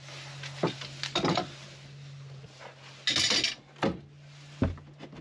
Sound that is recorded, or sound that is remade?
recorded